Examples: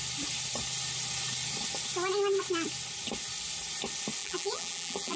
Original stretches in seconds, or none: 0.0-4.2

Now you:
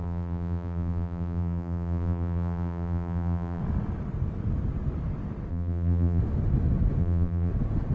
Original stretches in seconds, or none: 3.6-5.5; 6.2-7.0; 7.5-7.9

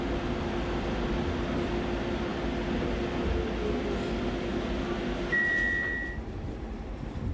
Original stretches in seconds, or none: 0.0-7.3

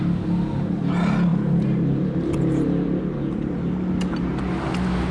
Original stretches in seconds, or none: 0.0-1.3; 4.4-5.1

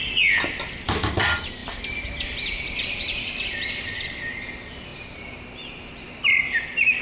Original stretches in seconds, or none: 0.0-1.6; 3.7-7.0